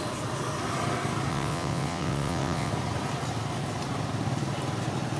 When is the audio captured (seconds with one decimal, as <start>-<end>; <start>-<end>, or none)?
0.0-1.3; 2.7-5.2